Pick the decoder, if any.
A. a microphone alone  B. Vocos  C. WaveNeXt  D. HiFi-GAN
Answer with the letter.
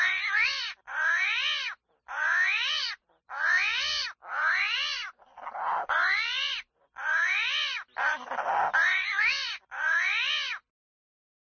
A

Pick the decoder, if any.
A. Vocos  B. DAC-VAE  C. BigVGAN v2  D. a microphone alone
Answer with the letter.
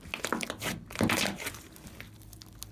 D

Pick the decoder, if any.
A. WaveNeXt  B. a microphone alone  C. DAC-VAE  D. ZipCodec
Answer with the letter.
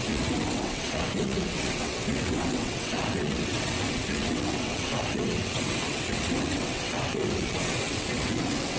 A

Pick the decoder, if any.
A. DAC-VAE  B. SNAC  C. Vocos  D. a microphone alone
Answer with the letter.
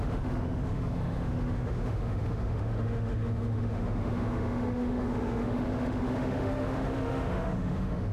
A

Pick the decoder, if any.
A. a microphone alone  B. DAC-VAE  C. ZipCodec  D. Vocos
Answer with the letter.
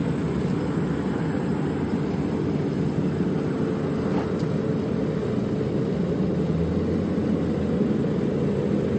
A